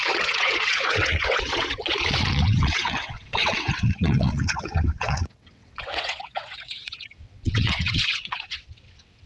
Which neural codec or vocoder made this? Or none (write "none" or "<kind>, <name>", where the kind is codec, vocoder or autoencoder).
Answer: vocoder, WaveNeXt